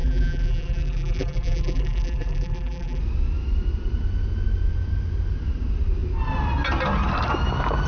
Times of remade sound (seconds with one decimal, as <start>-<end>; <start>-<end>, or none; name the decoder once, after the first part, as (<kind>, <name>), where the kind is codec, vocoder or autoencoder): 0.0-3.0 (vocoder, BigVGAN v2)